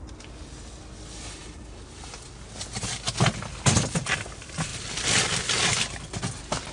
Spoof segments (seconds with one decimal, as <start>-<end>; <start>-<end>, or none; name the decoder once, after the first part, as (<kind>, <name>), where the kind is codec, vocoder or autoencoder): none